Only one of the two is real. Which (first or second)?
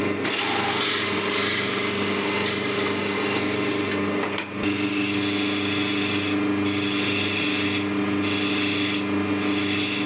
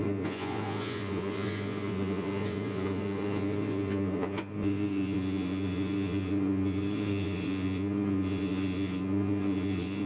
first